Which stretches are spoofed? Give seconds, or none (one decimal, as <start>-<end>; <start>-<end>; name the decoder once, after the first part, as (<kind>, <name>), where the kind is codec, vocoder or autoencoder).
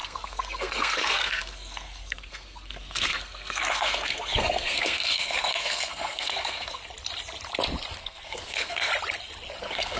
0.0-6.8 (codec, SNAC); 8.0-8.9; 9.6-10.0